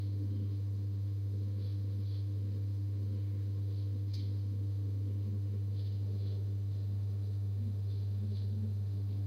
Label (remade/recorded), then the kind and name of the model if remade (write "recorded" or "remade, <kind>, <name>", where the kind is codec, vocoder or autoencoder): remade, autoencoder, DAC-VAE